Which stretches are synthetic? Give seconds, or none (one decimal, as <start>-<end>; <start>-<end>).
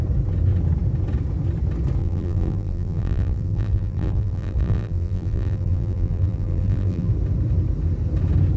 2.0-7.1